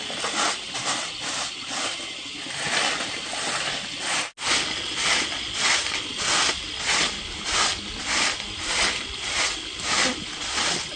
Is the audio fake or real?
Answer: real